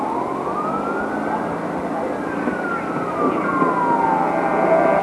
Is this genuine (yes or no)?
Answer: yes